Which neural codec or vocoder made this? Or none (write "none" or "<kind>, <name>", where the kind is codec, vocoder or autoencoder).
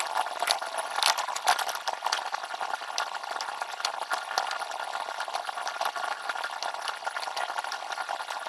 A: none